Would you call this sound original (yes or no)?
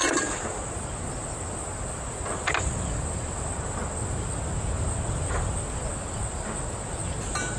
yes